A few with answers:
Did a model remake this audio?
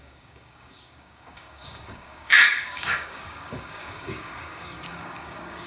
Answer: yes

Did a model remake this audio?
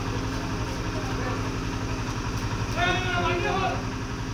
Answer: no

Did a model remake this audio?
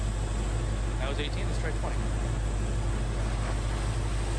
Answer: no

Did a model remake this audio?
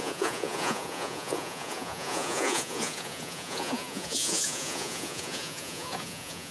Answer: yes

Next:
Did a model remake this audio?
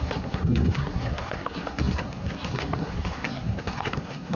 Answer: yes